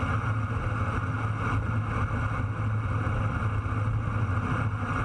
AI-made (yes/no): no